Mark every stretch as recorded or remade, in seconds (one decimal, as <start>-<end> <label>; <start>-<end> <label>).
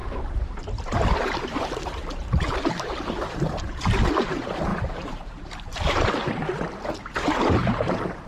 0.0-4.1 remade; 4.1-4.7 recorded; 4.7-6.1 remade; 6.1-7.6 recorded; 7.6-8.3 remade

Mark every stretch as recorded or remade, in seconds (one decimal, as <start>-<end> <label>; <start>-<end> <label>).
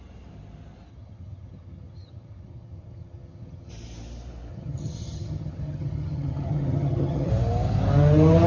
0.0-0.9 recorded; 0.9-3.7 remade; 3.7-4.5 recorded; 4.5-7.3 remade; 7.3-8.5 recorded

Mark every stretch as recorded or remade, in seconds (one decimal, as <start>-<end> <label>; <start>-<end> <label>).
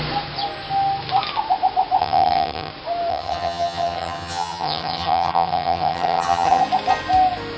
0.0-2.0 recorded; 2.0-2.7 remade; 2.7-3.1 recorded; 3.1-6.6 remade; 6.6-7.6 recorded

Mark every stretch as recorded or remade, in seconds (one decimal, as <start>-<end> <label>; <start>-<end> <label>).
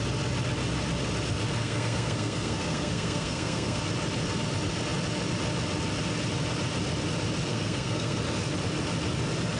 0.0-1.6 recorded; 1.6-3.8 remade; 3.8-7.5 recorded; 7.5-8.2 remade; 8.2-9.6 recorded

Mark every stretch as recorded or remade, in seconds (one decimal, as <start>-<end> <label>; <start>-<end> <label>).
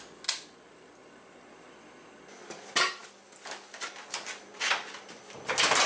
0.0-5.9 recorded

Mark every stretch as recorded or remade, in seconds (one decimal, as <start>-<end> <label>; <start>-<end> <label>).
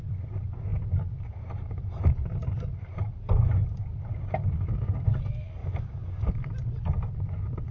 0.0-7.7 recorded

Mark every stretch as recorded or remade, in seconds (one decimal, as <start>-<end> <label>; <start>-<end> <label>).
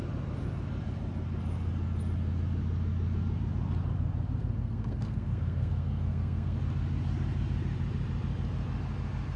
0.0-4.4 recorded; 4.4-6.6 remade; 6.6-9.4 recorded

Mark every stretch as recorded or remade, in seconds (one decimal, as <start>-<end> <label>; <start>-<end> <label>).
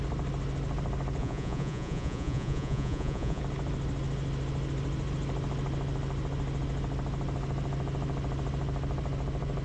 0.0-1.2 recorded; 1.2-3.4 remade; 3.4-9.6 recorded